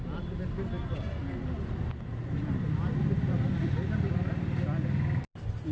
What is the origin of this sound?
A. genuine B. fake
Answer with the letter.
A